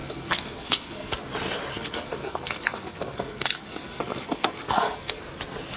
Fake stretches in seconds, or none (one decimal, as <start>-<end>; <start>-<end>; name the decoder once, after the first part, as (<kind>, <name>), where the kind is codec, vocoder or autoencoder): 0.0-1.1 (codec, SNAC); 1.7-5.2